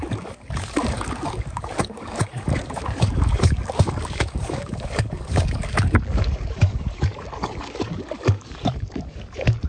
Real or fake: fake